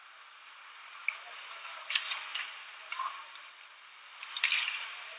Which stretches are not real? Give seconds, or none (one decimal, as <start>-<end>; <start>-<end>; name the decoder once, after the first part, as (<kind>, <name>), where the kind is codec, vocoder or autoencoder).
0.0-5.2 (vocoder, BigVGAN v2)